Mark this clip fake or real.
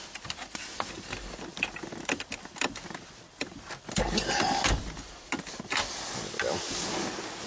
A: real